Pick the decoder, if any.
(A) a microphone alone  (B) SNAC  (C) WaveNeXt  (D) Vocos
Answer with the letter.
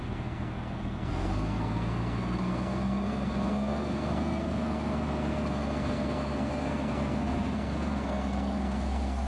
B